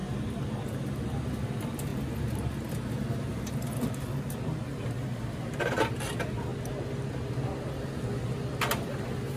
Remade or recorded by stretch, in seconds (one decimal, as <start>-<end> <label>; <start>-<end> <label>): 0.0-1.4 recorded; 1.4-1.9 remade; 1.9-4.9 recorded; 4.9-6.5 remade; 6.5-8.8 recorded; 8.8-9.4 remade